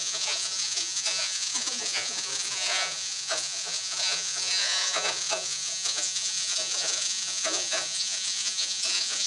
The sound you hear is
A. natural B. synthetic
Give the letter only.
B